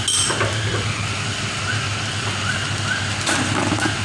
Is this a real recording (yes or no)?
yes